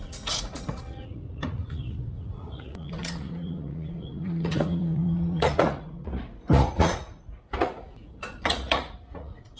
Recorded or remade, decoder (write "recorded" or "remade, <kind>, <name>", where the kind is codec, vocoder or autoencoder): remade, vocoder, Vocos